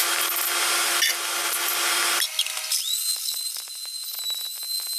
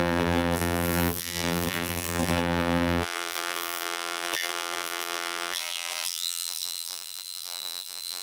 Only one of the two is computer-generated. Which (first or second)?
second